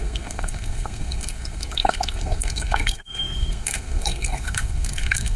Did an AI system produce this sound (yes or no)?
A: yes